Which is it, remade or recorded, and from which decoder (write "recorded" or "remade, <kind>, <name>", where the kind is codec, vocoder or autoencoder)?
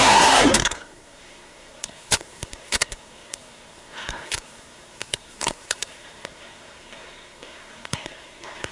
remade, codec, SNAC